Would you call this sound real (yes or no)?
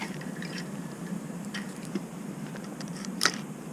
no